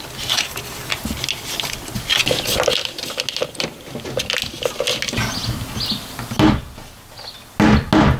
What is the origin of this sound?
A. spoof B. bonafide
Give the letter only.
B